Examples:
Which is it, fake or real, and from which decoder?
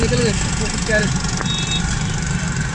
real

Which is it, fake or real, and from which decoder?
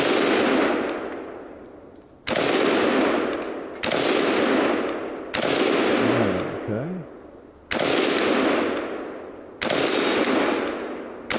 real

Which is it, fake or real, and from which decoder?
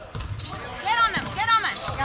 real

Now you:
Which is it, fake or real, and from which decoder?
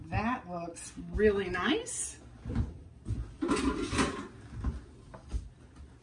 real